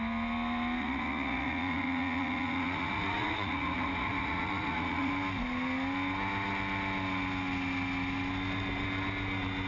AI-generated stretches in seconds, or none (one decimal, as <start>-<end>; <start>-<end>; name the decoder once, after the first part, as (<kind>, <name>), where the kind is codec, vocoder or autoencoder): 0.8-5.1 (vocoder, Vocos)